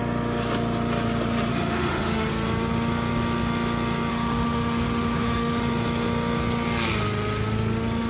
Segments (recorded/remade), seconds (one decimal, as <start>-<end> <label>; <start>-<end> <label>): 0.0-1.5 recorded; 1.5-2.3 remade; 2.3-4.1 recorded; 4.1-5.6 remade; 5.6-8.1 recorded